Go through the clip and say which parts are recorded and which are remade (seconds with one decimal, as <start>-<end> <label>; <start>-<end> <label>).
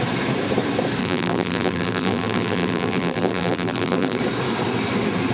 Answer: 0.0-1.0 recorded; 1.0-4.2 remade; 4.2-5.3 recorded